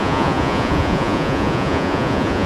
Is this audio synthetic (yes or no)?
yes